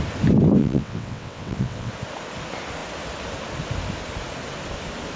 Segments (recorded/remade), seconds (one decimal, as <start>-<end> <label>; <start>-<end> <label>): 0.0-0.6 recorded; 0.6-1.9 remade; 1.9-5.2 recorded